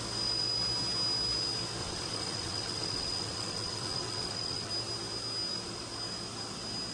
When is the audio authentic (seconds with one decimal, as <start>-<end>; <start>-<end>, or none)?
0.0-1.8; 4.7-6.9